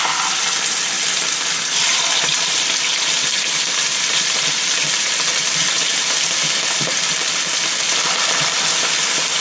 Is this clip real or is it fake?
fake